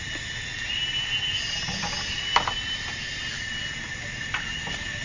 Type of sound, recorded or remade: recorded